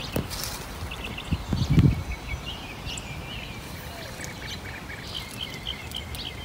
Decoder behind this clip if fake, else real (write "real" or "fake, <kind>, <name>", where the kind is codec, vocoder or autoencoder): real